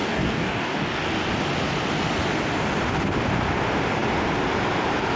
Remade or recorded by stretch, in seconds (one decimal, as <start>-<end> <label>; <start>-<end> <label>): 0.0-1.1 remade; 1.1-5.2 recorded